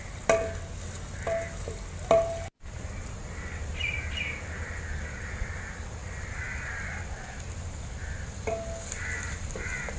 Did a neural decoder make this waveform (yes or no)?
no